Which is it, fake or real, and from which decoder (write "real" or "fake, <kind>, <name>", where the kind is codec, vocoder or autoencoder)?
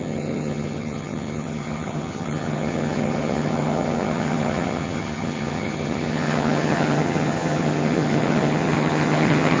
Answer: fake, vocoder, HiFi-GAN